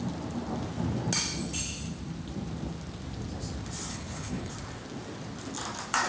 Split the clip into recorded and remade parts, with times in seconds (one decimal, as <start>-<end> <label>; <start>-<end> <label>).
0.0-3.9 recorded; 3.9-4.5 remade; 4.5-6.1 recorded